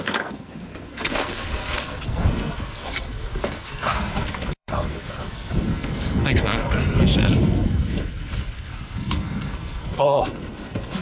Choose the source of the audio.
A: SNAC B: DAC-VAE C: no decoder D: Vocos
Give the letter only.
A